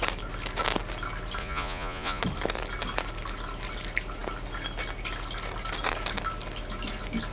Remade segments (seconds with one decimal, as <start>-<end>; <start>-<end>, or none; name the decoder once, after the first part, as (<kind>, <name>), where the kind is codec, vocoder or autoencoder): 1.4-2.2 (vocoder, Vocos)